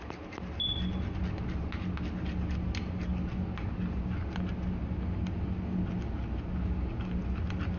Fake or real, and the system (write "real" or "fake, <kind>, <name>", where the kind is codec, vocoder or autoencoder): real